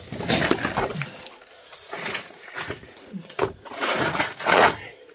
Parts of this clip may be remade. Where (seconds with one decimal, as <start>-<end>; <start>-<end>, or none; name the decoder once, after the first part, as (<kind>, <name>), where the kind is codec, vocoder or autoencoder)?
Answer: 1.7-5.1 (vocoder, Vocos)